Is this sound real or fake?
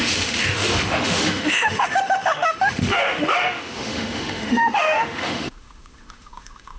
fake